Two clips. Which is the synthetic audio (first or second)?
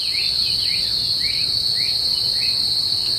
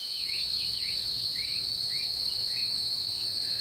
second